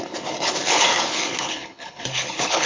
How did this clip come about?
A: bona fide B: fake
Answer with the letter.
B